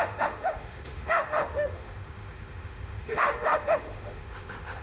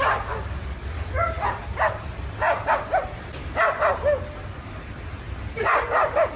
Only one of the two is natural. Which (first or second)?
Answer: second